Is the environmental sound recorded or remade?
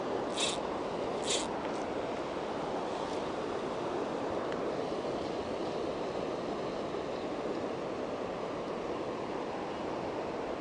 recorded